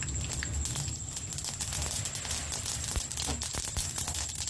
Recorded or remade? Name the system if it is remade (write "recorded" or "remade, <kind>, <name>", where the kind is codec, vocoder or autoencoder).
recorded